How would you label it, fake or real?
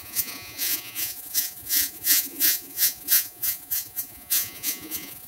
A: fake